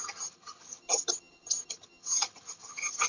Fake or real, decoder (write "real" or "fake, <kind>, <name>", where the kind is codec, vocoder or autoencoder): fake, vocoder, HiFi-GAN